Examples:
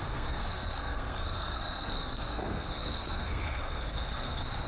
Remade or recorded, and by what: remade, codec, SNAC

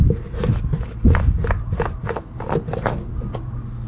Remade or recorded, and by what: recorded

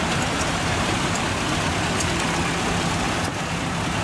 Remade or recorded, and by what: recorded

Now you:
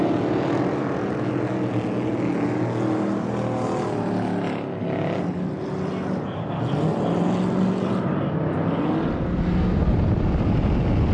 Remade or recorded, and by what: recorded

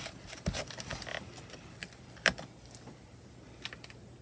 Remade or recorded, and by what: recorded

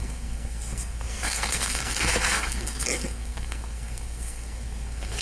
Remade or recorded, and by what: remade, codec, SNAC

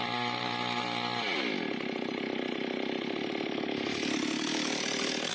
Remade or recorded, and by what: recorded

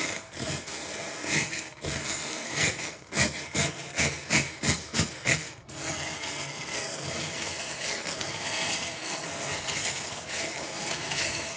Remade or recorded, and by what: remade, codec, SNAC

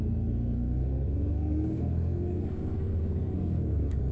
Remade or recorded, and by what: remade, codec, SNAC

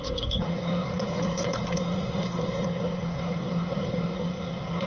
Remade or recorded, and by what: remade, codec, SNAC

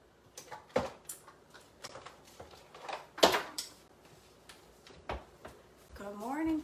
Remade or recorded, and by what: recorded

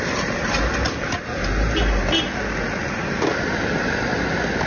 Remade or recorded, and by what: recorded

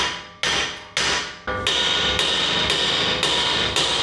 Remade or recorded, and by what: recorded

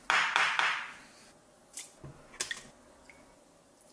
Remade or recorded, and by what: recorded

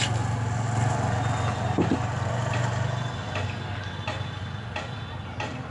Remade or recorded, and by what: recorded